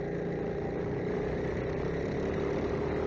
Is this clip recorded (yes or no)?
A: yes